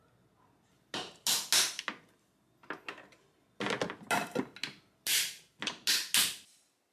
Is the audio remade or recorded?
recorded